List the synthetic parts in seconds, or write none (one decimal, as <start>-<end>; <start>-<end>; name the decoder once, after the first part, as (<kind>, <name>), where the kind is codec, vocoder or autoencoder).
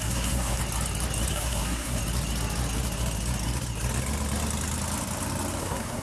0.0-0.6 (codec, SNAC); 1.3-2.0; 5.6-6.0